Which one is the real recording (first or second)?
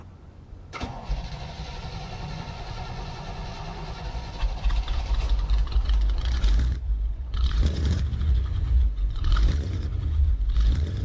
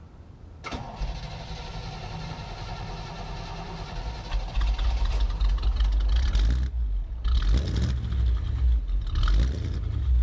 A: second